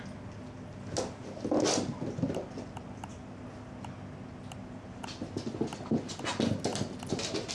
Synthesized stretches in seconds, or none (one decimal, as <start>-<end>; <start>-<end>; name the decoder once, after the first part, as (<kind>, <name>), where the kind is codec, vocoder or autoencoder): none